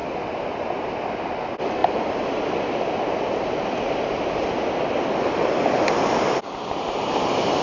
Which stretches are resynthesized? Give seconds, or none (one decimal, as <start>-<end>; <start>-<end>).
none